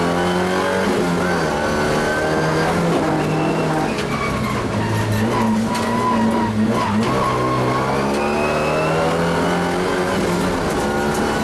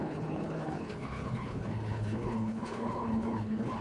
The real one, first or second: first